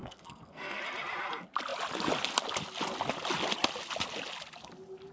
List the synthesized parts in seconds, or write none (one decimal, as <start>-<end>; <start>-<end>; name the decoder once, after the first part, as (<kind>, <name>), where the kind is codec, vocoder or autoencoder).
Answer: 0.0-0.8 (codec, SNAC)